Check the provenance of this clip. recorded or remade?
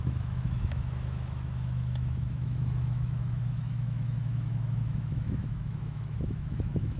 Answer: remade